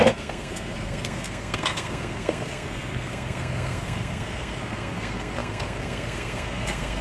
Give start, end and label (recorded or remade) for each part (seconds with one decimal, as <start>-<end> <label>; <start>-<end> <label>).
0.0-7.0 remade